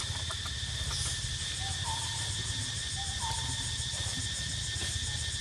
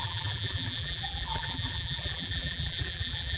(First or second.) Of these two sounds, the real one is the first